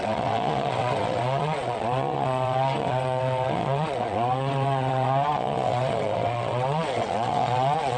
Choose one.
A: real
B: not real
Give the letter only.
B